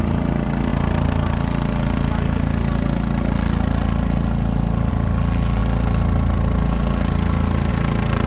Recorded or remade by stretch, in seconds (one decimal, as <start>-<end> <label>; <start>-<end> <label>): 0.0-8.3 recorded